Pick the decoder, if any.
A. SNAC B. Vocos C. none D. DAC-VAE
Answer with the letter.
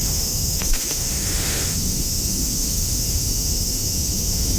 D